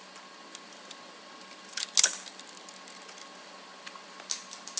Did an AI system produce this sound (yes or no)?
no